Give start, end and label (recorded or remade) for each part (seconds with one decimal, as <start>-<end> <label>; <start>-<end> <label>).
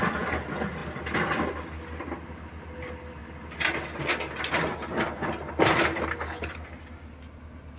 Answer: 0.0-7.8 recorded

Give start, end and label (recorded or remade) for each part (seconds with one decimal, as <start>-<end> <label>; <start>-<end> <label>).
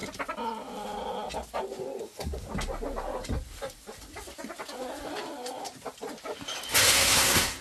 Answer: 0.0-2.0 recorded; 2.0-2.5 remade; 2.5-6.9 recorded; 6.9-7.6 remade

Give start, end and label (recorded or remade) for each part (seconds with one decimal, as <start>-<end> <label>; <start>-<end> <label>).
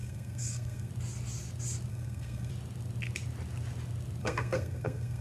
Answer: 0.0-0.9 remade; 0.9-1.9 recorded; 1.9-2.5 remade; 2.5-4.2 recorded; 4.2-5.2 remade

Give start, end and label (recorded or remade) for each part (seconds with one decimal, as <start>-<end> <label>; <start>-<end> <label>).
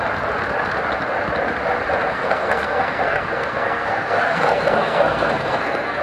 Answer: 0.0-2.1 recorded; 2.1-6.0 remade